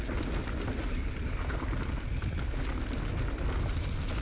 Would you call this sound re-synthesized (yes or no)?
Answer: no